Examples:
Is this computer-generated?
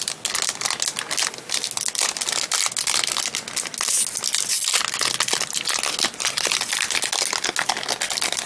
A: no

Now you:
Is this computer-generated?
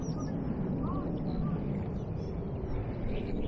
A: no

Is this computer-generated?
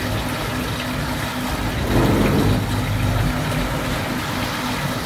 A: no